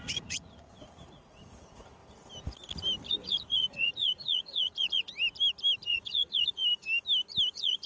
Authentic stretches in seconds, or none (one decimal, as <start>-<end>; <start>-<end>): 2.0-3.1; 5.1-5.9; 6.6-7.5